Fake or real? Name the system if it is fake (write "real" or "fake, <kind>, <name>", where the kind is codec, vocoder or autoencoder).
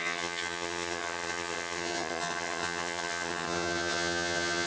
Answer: fake, vocoder, HiFi-GAN